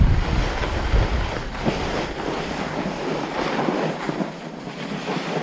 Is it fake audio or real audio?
real